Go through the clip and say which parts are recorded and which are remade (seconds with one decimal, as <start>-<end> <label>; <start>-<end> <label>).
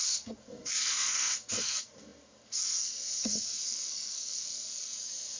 0.0-5.4 remade